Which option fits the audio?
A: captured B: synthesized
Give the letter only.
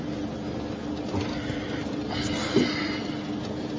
A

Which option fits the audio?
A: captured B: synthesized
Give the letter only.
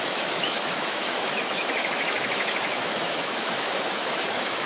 B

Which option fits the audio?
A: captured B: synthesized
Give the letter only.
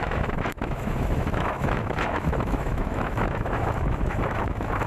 B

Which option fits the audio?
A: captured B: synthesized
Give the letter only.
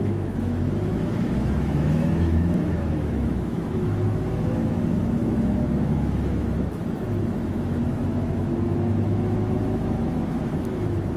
B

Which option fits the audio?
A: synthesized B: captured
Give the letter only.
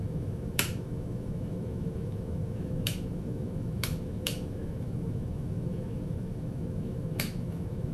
A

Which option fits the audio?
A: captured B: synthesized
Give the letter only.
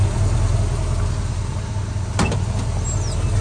A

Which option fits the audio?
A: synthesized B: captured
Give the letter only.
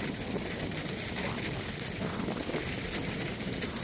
B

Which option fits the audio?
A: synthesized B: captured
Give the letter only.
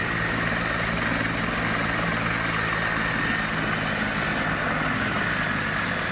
B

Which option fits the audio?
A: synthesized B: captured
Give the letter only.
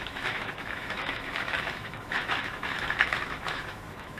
A